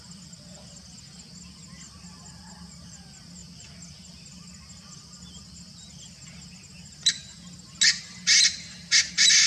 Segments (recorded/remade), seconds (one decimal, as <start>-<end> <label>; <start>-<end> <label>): 0.0-3.4 recorded; 3.4-6.3 remade; 6.3-9.5 recorded